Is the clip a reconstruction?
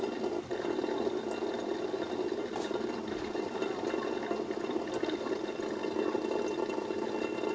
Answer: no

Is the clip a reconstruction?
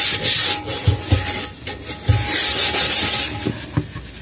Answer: no